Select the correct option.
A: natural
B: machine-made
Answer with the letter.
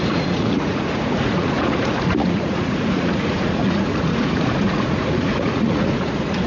B